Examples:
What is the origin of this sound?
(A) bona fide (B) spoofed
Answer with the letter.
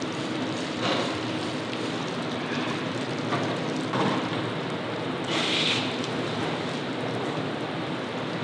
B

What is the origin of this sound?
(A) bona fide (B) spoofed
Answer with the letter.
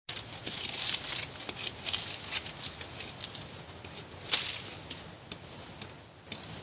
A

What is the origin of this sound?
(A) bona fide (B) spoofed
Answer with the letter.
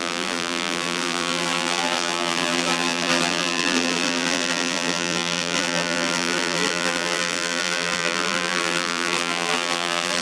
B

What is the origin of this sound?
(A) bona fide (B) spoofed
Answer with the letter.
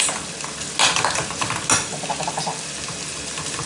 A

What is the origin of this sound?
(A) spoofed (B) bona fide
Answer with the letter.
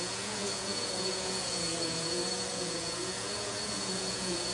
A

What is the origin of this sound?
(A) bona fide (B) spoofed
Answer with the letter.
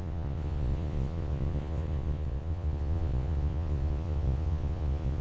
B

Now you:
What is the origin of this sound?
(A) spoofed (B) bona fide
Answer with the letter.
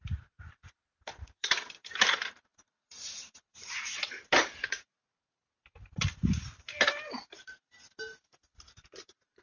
A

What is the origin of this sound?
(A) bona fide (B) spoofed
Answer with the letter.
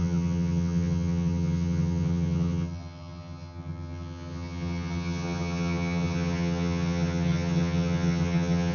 B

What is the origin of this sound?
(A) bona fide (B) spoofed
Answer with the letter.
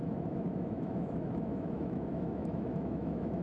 B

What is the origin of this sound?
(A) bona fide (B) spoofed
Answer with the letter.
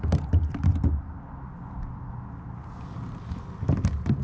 A